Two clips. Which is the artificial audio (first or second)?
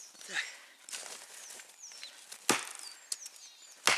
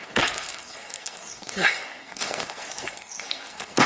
second